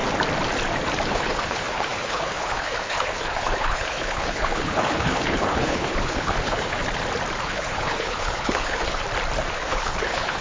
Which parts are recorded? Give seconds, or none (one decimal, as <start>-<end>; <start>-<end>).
0.0-1.1; 6.8-7.4; 9.0-9.5